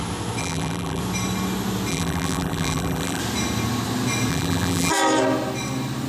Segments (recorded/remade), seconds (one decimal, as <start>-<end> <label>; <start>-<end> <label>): 0.0-0.4 recorded; 0.4-1.0 remade; 1.0-1.9 recorded; 1.9-3.2 remade; 3.2-4.3 recorded; 4.3-4.9 remade; 4.9-6.1 recorded